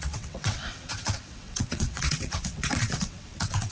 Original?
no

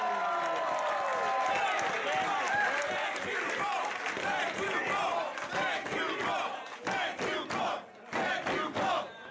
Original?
yes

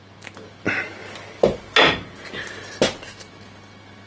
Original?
yes